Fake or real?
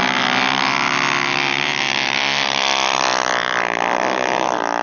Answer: real